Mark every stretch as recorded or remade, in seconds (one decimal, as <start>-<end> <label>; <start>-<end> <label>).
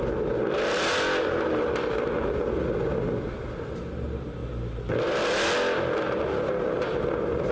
0.0-7.5 recorded